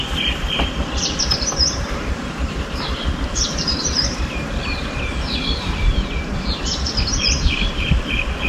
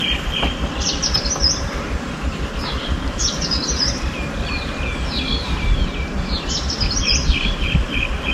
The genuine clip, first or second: second